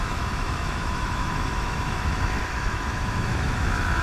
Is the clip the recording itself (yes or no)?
no